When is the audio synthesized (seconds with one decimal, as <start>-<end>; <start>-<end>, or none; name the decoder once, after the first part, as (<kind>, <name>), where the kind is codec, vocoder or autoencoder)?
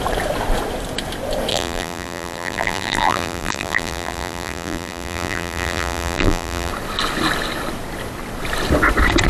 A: 1.5-6.7 (vocoder, BigVGAN v2)